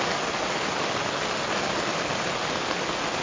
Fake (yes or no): no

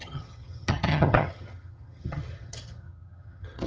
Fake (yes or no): yes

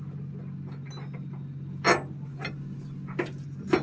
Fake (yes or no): no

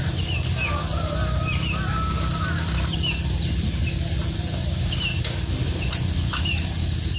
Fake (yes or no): no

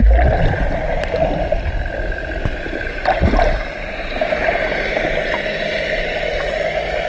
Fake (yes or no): no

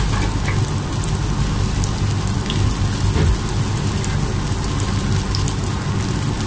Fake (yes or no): no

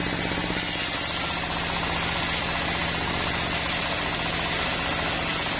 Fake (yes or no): no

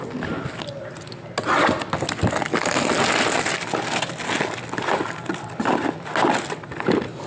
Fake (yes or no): no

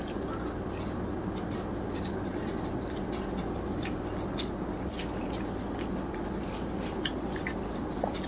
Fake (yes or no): no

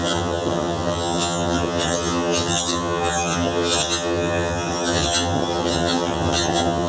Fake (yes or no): yes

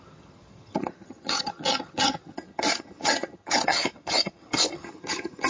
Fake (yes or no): yes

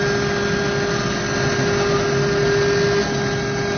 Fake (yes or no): no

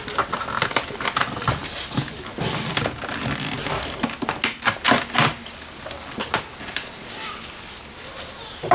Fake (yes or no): no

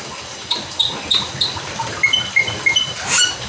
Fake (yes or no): no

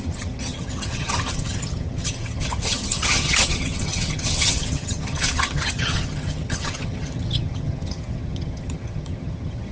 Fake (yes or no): yes